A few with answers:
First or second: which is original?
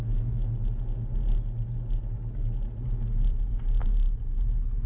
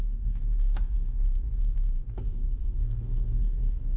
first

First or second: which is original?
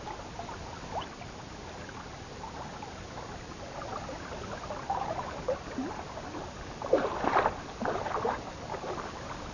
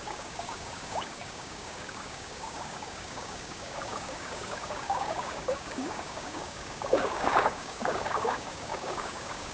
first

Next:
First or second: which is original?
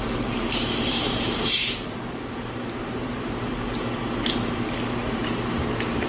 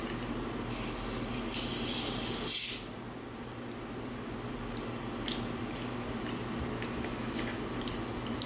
second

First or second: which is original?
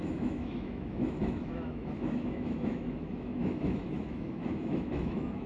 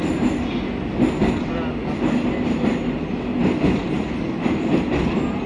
second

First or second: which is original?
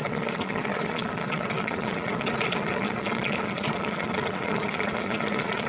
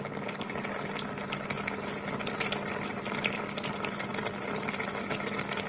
second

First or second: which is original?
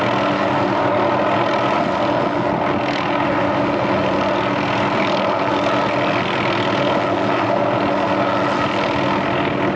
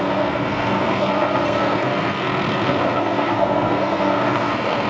first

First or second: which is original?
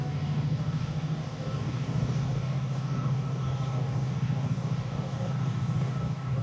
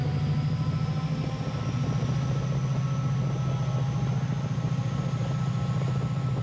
second